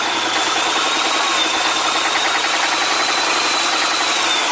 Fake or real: real